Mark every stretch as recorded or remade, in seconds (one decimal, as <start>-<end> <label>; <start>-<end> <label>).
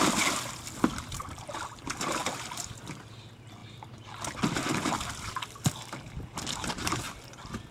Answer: 0.0-2.2 recorded; 2.2-3.1 remade; 3.1-7.7 recorded